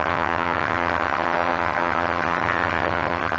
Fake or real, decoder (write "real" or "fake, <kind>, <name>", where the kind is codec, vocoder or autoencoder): fake, vocoder, HiFi-GAN